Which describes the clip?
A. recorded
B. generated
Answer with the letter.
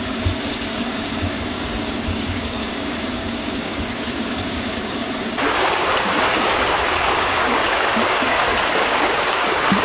B